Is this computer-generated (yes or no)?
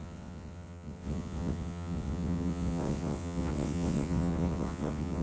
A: yes